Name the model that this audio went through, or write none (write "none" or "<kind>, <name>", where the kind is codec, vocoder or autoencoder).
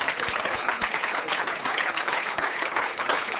codec, HILCodec